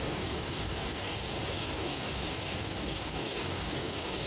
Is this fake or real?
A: fake